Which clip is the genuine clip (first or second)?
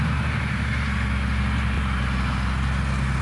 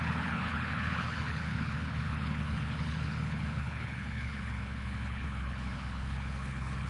first